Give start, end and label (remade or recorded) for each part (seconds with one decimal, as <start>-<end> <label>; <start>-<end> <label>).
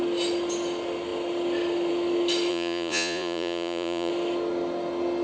0.0-2.5 recorded; 2.5-4.1 remade; 4.1-5.2 recorded